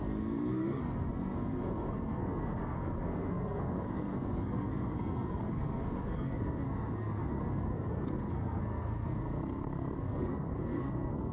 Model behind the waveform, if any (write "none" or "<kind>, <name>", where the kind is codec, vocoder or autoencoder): codec, SNAC